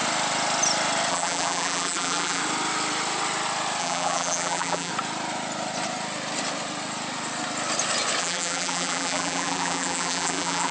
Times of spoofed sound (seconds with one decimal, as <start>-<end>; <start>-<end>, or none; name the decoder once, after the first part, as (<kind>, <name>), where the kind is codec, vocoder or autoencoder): 1.1-2.4 (vocoder, BigVGAN v2); 3.8-4.9; 8.2-10.7